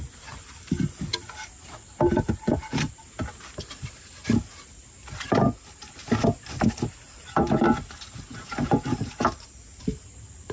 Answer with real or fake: real